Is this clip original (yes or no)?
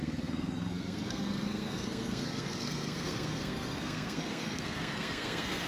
no